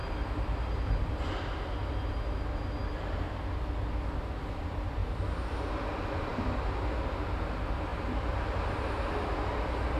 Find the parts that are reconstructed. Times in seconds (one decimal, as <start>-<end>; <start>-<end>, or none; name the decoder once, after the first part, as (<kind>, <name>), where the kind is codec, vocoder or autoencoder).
none